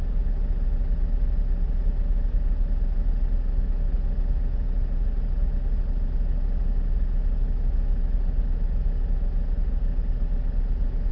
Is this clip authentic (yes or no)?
yes